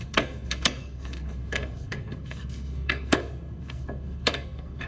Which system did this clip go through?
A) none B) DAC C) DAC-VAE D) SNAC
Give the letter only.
D